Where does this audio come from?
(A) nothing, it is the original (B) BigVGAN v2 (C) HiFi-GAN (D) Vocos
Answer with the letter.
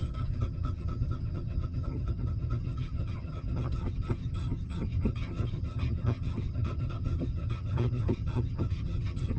C